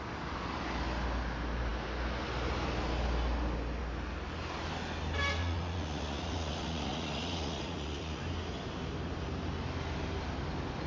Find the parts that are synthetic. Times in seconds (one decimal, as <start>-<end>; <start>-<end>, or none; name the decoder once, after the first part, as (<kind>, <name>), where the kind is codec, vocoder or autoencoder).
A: 5.4-8.2 (vocoder, Vocos)